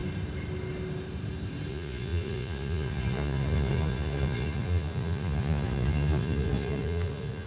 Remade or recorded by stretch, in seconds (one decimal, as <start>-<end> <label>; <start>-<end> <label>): 0.0-1.7 recorded; 1.7-7.5 remade

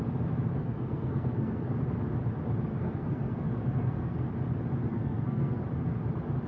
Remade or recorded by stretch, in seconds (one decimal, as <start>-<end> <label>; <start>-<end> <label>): 0.0-0.6 recorded; 0.6-1.8 remade; 1.8-2.7 recorded; 2.7-4.3 remade; 4.3-4.9 recorded; 4.9-5.6 remade; 5.6-6.5 recorded

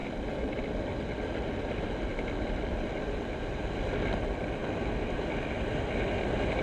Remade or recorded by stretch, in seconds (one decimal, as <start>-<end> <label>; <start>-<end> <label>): 0.0-6.6 recorded